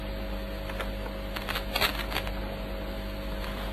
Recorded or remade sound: recorded